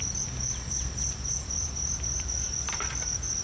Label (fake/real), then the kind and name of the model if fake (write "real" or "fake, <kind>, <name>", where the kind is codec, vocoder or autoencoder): real